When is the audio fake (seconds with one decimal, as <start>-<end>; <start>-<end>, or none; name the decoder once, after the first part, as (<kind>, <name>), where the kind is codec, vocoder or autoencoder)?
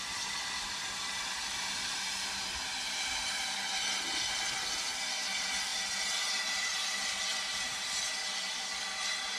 none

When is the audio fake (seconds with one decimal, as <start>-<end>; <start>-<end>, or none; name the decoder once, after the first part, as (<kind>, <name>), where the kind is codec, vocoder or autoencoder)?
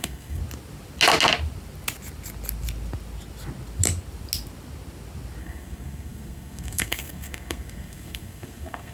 0.0-0.4 (codec, SNAC); 5.4-8.9